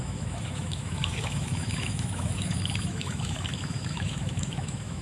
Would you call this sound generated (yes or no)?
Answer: yes